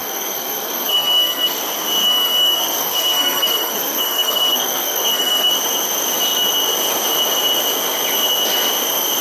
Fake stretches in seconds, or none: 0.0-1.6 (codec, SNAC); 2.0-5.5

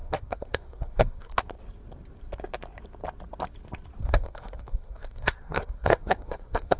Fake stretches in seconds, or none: 0.0-1.3 (codec, SNAC); 4.0-6.8

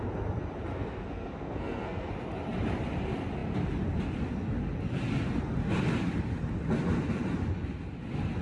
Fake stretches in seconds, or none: 0.7-2.1 (codec, SNAC)